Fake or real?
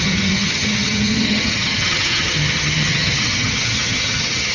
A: fake